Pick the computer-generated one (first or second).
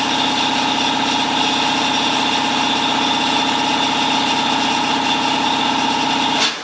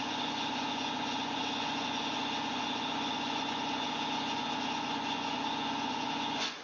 second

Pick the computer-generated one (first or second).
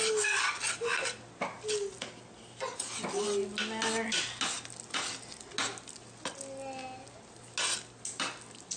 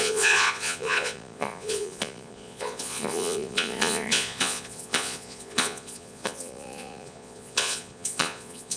second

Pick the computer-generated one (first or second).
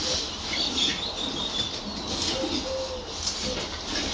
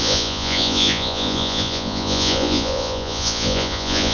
second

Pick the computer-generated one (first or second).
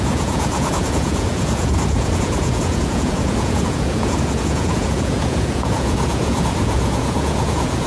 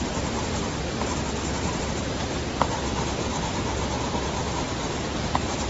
first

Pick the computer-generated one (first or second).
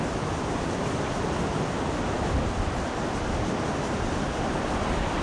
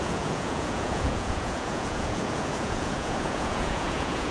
second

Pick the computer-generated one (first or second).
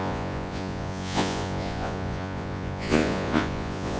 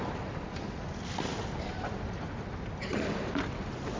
first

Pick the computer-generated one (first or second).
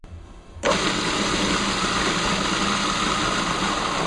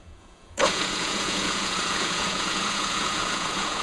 second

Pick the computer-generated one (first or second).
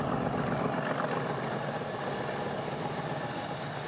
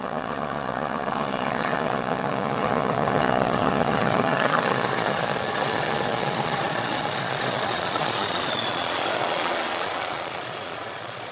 second